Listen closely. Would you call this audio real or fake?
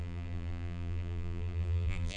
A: fake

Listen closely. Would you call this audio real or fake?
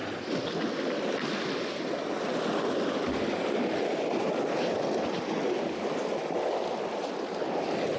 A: real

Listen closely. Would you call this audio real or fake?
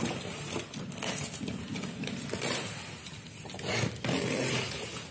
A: real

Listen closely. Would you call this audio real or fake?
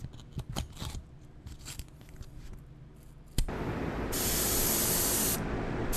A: real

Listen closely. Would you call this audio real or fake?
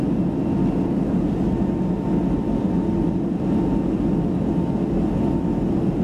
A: real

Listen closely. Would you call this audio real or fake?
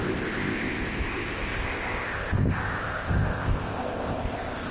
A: fake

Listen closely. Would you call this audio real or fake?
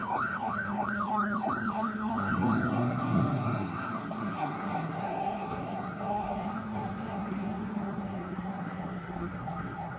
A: fake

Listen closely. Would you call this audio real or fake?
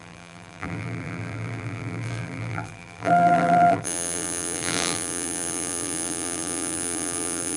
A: fake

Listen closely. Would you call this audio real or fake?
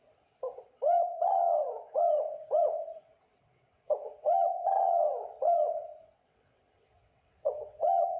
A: fake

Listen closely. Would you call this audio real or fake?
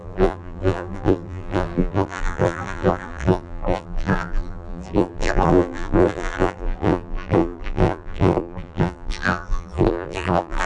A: fake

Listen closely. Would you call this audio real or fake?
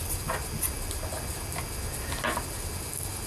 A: real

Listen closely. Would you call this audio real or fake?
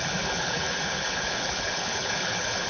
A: fake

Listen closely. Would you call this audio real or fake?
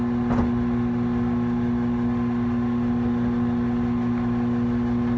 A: real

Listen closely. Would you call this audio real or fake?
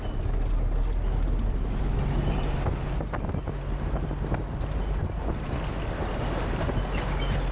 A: real